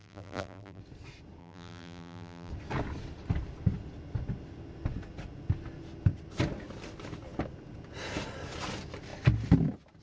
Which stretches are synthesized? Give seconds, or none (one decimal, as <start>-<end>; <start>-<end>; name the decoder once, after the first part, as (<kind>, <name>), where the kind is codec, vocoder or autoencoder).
0.0-0.8 (vocoder, BigVGAN v2); 1.4-2.5